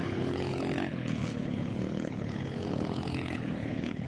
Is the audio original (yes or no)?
no